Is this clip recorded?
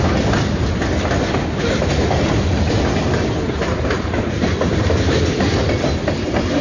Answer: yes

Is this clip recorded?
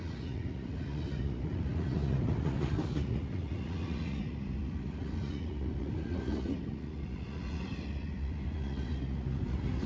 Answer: no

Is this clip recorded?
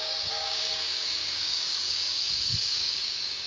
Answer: no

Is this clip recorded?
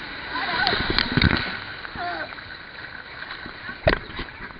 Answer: yes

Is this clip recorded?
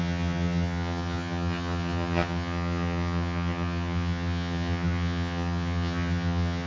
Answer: no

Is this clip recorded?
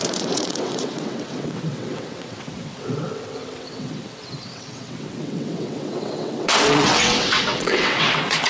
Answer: no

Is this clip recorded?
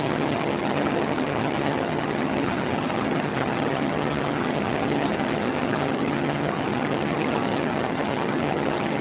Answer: no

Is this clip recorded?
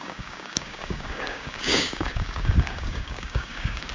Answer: no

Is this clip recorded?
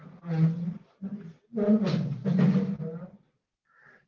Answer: yes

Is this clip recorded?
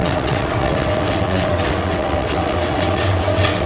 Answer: no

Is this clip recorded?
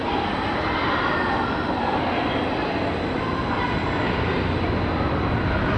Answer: yes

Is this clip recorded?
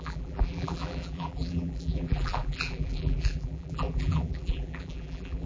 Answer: no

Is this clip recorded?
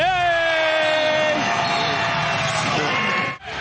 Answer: yes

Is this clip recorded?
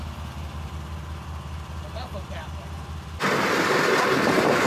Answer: yes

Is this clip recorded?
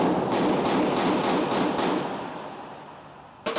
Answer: yes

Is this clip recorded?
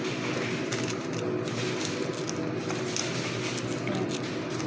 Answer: yes